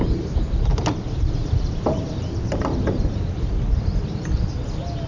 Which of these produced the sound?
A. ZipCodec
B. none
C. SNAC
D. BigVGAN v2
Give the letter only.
B